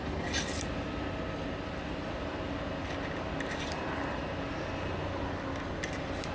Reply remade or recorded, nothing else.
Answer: recorded